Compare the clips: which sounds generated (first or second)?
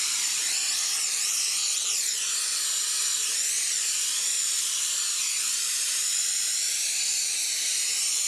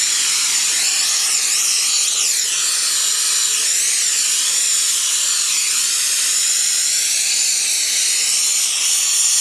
first